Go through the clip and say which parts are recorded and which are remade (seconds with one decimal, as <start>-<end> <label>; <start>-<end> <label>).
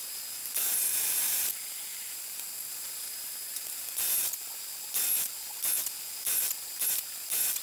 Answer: 0.0-0.4 recorded; 0.4-4.5 remade; 4.5-7.6 recorded